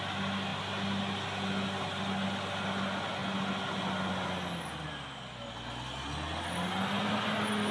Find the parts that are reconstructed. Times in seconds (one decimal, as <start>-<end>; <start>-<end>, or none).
none